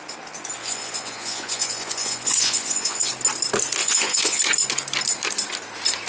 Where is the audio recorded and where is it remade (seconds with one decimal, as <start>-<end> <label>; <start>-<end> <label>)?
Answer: 0.0-0.6 recorded; 0.6-3.1 remade; 3.1-3.8 recorded; 3.8-4.4 remade; 4.4-6.1 recorded